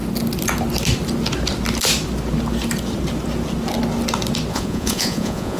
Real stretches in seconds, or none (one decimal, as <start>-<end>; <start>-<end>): 0.0-4.5